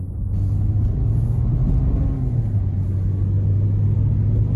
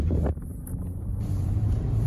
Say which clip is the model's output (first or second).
second